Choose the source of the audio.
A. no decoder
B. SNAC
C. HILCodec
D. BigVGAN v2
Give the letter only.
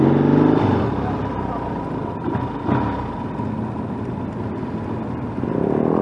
A